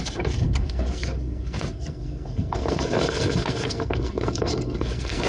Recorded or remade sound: remade